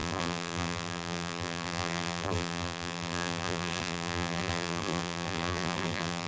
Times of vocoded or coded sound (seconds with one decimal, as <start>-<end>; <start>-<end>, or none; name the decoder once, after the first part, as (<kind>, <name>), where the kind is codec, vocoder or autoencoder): 0.0-6.3 (vocoder, BigVGAN v2)